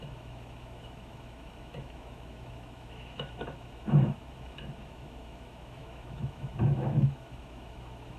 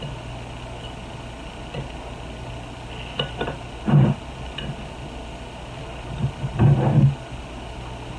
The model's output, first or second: first